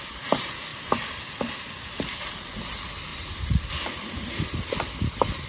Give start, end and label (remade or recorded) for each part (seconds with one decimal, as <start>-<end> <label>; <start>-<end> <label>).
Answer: 0.0-0.7 recorded; 0.7-1.2 remade; 1.2-3.1 recorded; 3.1-3.7 remade; 3.7-5.5 recorded